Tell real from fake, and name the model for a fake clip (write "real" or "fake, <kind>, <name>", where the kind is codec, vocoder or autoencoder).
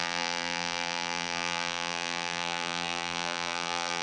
fake, vocoder, BigVGAN v2